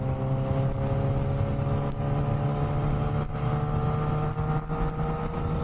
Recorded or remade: recorded